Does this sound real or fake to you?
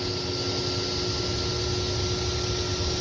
real